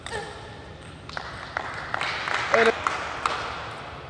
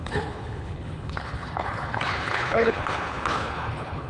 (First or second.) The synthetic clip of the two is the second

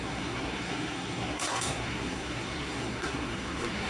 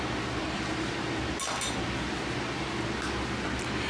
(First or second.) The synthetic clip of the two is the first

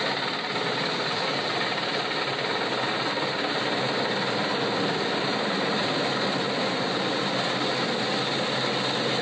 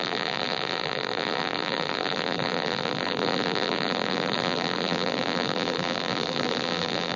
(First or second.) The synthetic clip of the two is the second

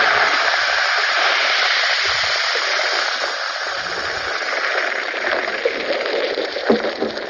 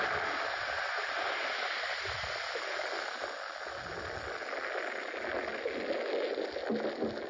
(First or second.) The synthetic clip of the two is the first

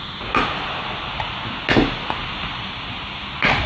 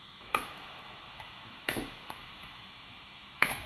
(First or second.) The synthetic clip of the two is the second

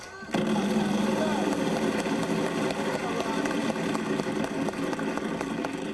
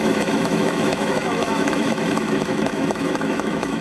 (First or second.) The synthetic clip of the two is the second